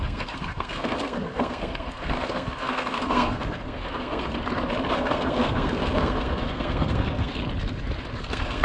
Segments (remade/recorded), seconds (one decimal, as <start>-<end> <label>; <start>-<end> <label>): 0.0-4.3 remade; 4.3-4.9 recorded; 4.9-7.4 remade; 7.4-8.2 recorded; 8.2-8.6 remade